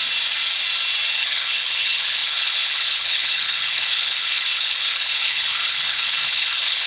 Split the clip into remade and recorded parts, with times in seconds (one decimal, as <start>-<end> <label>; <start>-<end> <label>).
0.0-1.2 recorded; 1.2-6.9 remade